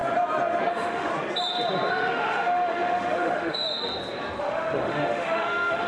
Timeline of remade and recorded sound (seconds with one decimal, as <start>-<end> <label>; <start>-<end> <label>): 0.0-0.7 recorded; 0.7-1.1 remade; 1.1-1.9 recorded; 1.9-3.8 remade; 3.8-4.4 recorded; 4.4-5.9 remade